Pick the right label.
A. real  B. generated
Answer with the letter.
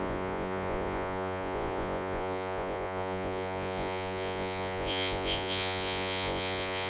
B